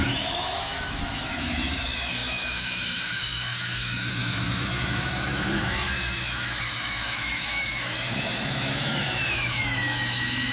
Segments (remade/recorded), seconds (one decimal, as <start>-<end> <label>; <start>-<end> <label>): 0.0-10.5 remade